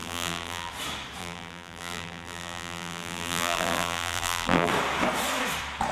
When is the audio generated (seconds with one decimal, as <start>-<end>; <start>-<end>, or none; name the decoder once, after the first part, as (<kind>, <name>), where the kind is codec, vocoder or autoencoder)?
0.0-0.7 (vocoder, BigVGAN v2); 1.2-4.7